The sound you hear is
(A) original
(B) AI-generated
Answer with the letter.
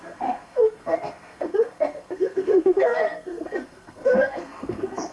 B